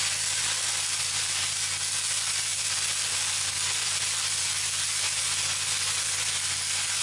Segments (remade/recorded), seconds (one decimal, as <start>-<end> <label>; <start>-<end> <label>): 0.0-7.0 recorded